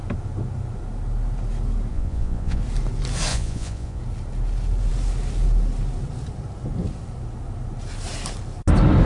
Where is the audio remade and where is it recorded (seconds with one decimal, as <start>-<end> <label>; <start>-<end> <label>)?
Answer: 0.0-1.9 recorded; 1.9-2.6 remade; 2.6-3.3 recorded; 3.3-4.0 remade; 4.0-9.1 recorded